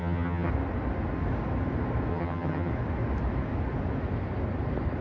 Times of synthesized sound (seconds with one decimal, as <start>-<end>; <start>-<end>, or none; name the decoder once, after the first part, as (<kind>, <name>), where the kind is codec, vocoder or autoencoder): 0.0-0.5 (vocoder, HiFi-GAN); 2.1-2.7